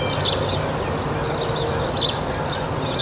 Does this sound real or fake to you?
real